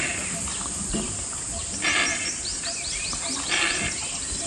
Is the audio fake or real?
fake